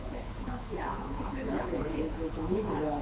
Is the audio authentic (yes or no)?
no